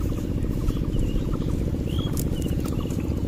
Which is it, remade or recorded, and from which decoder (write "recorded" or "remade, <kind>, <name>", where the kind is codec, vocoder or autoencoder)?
recorded